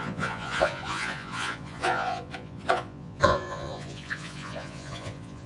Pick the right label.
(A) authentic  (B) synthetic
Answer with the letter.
B